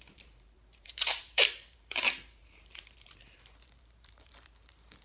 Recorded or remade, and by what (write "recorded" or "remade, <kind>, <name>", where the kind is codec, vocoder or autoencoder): remade, vocoder, BigVGAN v2